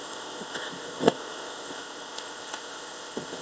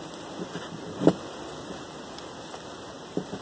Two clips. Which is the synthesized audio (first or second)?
first